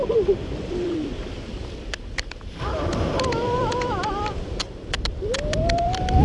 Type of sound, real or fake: fake